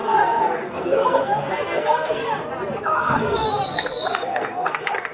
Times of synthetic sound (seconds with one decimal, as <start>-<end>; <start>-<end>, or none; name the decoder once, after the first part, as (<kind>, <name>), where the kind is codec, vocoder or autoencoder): 0.0-2.2 (codec, SNAC); 3.0-5.1